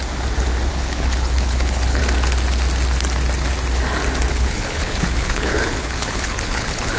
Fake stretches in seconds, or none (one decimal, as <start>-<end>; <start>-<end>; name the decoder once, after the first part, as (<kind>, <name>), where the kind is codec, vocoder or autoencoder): 0.7-2.0 (codec, HILCodec); 4.3-7.0